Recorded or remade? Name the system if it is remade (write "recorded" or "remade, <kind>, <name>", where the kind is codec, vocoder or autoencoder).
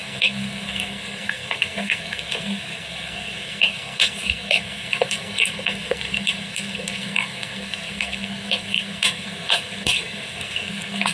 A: remade, codec, SNAC